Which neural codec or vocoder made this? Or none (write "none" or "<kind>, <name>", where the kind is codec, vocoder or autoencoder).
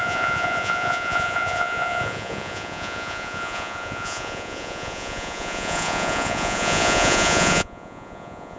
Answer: vocoder, Vocos